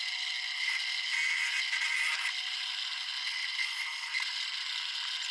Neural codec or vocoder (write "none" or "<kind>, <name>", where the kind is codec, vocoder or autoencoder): none